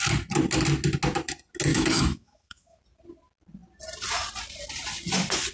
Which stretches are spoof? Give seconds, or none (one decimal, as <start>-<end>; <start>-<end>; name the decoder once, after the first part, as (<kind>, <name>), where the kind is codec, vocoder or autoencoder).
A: 1.7-2.8 (autoencoder, DAC-VAE)